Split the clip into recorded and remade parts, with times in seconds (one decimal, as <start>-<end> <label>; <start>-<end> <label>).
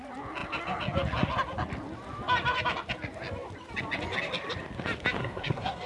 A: 0.0-5.2 recorded; 5.2-5.9 remade